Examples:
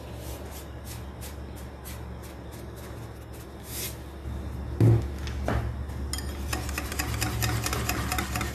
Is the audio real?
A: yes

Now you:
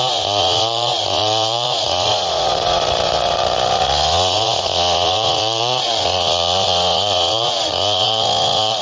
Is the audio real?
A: no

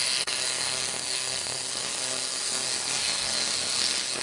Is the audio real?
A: no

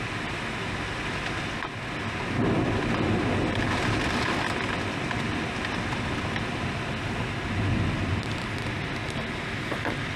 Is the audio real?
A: yes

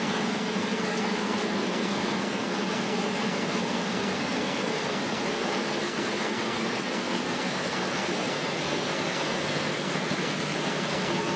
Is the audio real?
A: no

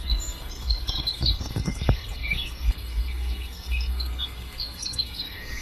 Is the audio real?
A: no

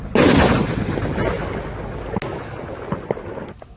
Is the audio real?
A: yes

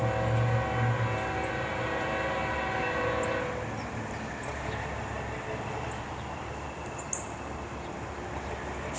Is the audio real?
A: yes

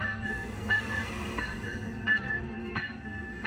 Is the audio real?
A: no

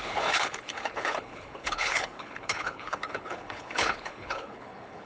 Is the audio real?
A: no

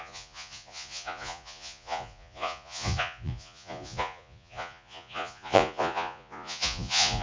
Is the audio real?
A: no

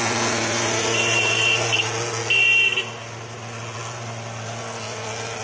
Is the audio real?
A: yes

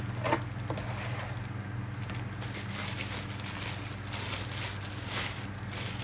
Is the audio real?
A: yes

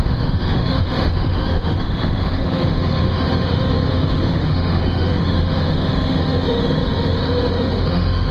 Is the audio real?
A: no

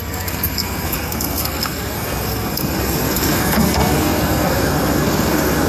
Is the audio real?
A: no